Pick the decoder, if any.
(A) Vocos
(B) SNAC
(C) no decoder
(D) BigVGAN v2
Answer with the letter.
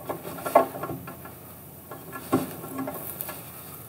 C